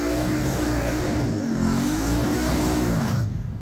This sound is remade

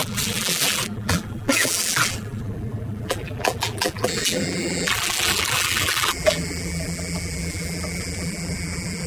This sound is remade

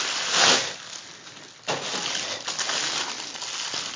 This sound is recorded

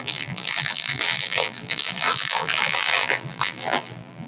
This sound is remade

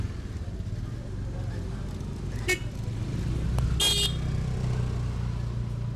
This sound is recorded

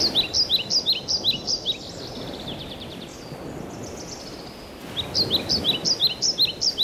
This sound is recorded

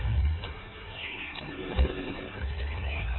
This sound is remade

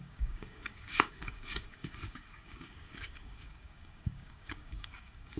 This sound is remade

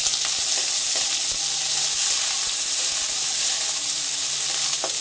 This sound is recorded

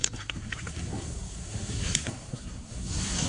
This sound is remade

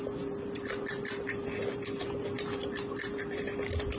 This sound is recorded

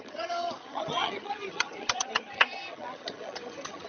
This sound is remade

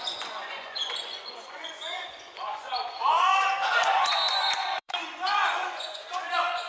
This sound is remade